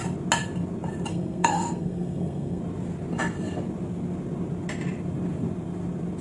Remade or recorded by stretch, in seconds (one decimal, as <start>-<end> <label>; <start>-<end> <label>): 0.0-1.1 recorded; 1.1-2.6 remade; 2.6-6.2 recorded